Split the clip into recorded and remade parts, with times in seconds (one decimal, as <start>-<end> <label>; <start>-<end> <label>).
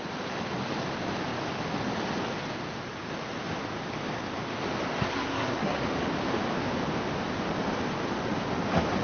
0.0-5.1 recorded; 5.1-5.8 remade; 5.8-9.0 recorded